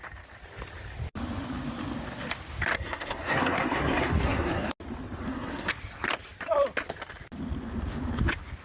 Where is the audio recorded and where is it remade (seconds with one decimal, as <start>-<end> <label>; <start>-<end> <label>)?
0.0-2.7 recorded; 2.7-4.7 remade; 4.7-5.2 recorded; 5.2-5.7 remade; 5.7-8.6 recorded